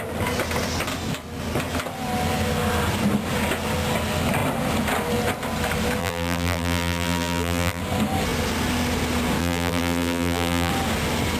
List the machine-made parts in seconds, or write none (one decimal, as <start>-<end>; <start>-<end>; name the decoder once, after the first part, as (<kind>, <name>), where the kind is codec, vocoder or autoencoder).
6.0-7.8 (vocoder, BigVGAN v2); 9.4-10.7